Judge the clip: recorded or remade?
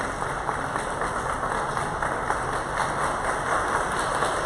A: recorded